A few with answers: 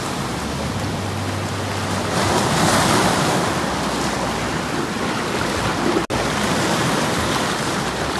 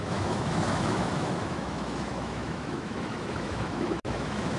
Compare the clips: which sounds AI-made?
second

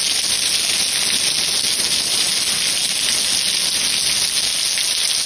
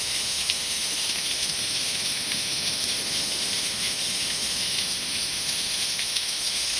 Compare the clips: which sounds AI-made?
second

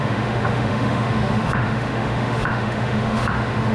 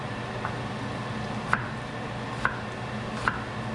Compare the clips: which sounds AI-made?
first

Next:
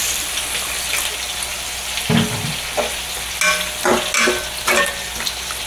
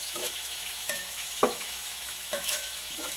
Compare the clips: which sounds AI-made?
second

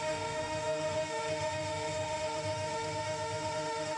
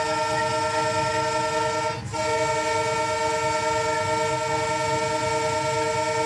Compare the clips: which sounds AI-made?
first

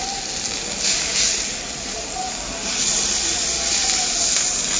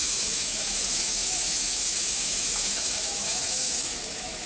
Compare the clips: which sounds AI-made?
second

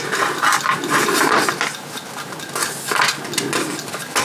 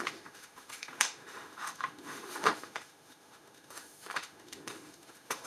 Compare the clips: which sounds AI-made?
second